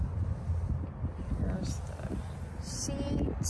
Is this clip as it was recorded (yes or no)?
yes